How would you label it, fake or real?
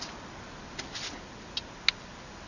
real